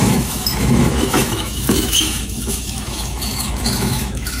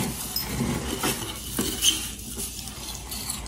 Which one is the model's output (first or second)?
first